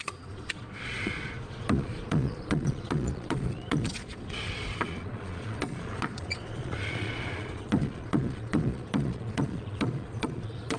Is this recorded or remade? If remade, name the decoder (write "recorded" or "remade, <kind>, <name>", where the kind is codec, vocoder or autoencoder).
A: remade, vocoder, Vocos